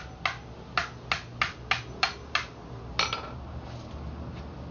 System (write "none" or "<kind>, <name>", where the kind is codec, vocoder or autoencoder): none